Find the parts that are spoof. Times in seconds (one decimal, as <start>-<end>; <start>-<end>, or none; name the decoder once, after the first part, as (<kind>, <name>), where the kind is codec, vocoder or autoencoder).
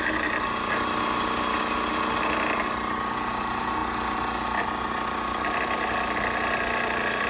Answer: none